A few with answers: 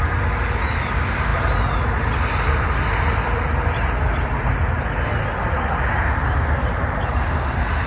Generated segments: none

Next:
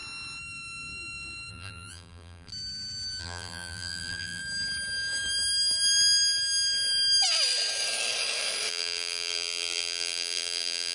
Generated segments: 1.5-2.5 (vocoder, BigVGAN v2); 3.2-4.4; 8.7-10.9

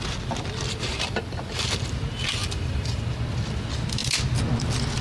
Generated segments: 0.9-1.8 (vocoder, BigVGAN v2); 2.4-3.0

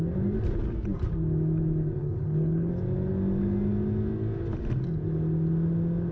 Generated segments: 2.0-2.7 (codec, HILCodec)

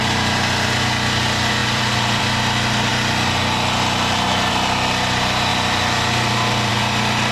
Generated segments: 1.6-2.2 (vocoder, BigVGAN v2)

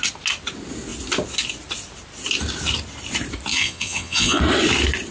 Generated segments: 3.5-4.4 (vocoder, Vocos)